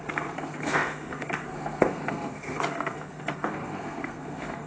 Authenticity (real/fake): fake